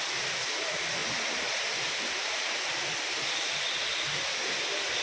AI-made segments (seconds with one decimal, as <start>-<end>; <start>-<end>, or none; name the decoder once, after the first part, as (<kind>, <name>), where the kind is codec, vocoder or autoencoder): none